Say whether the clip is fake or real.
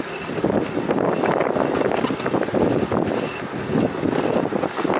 real